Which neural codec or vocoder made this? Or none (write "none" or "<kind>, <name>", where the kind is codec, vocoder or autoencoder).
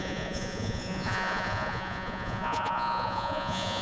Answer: vocoder, Vocos